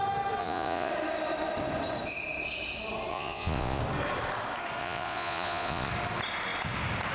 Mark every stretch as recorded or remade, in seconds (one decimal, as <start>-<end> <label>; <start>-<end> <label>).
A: 0.0-0.4 recorded; 0.4-0.9 remade; 0.9-3.1 recorded; 3.1-3.8 remade; 3.8-4.8 recorded; 4.8-5.9 remade; 5.9-7.1 recorded